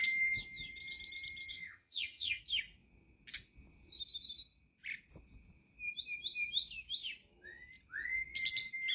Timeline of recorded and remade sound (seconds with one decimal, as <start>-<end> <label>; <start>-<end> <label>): 0.0-1.5 recorded; 1.5-2.4 remade; 2.4-8.9 recorded